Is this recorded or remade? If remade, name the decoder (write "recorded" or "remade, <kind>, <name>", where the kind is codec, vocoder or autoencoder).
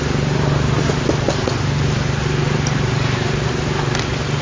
recorded